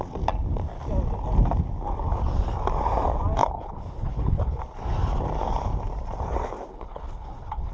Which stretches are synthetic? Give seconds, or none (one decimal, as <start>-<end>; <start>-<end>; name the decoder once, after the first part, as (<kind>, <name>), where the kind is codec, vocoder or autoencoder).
3.4-4.6 (codec, HILCodec); 6.7-7.7